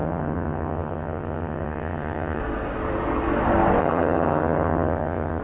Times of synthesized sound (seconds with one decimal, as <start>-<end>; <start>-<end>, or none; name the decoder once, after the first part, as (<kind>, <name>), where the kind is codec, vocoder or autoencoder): 0.0-2.4 (vocoder, HiFi-GAN); 3.8-5.4